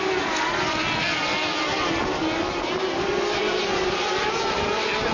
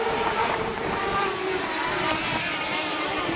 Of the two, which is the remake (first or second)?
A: second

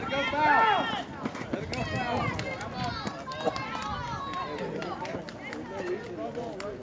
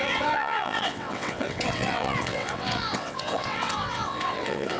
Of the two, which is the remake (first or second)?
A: second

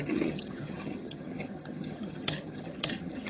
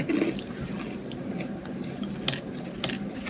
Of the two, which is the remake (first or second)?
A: first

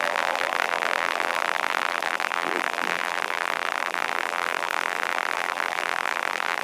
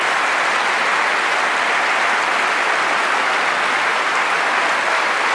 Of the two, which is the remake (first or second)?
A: first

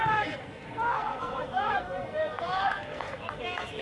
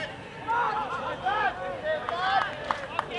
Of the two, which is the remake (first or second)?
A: first